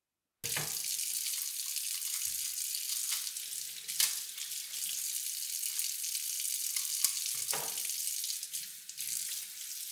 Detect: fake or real real